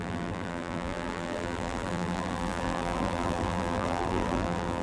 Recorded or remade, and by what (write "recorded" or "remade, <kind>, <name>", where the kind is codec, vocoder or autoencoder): remade, vocoder, BigVGAN v2